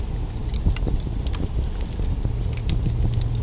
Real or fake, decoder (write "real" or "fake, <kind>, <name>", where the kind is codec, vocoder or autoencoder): real